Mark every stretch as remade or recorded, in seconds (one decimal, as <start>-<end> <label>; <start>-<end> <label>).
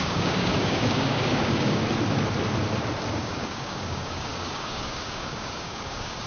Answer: 0.0-1.8 remade; 1.8-3.1 recorded; 3.1-6.3 remade